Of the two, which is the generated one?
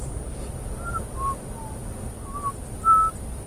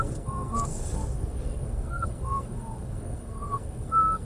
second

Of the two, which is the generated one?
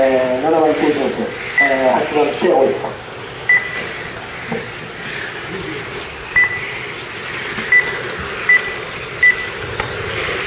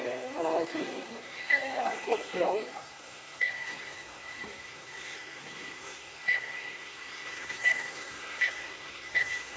second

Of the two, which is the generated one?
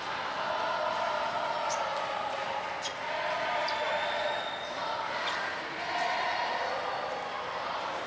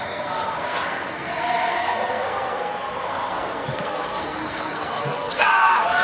second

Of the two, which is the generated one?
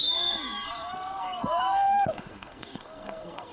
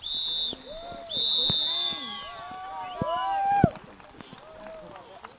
first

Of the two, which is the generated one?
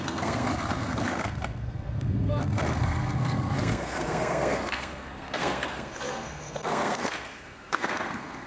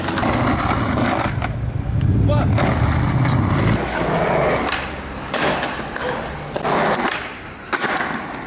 first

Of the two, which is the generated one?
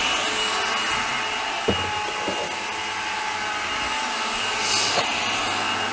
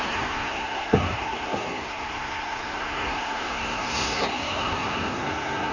second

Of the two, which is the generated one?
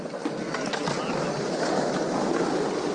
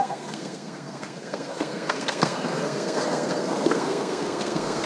second